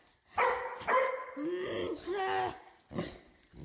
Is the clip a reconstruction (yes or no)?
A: no